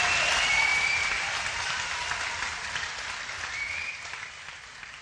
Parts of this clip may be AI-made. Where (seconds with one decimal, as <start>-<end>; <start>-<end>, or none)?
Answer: 0.7-1.9; 3.8-5.0